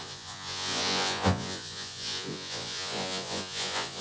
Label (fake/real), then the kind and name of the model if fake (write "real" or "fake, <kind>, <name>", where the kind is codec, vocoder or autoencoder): fake, vocoder, Vocos